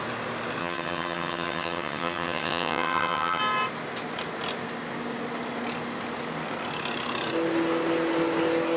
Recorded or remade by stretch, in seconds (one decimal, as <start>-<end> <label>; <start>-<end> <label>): 0.0-0.6 recorded; 0.6-3.4 remade; 3.4-8.8 recorded